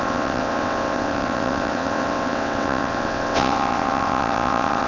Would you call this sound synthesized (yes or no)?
yes